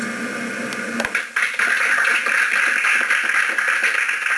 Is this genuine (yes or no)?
yes